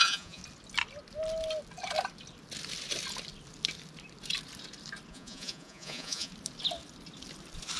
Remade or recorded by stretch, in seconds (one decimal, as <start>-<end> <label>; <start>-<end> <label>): 0.0-0.4 remade; 0.4-5.1 recorded; 5.1-6.3 remade; 6.3-7.8 recorded